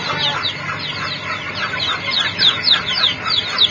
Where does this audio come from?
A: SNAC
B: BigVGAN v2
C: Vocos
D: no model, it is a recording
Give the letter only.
D